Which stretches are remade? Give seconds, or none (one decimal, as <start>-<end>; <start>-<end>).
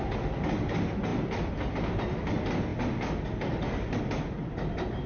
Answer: none